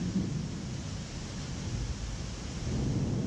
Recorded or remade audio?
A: recorded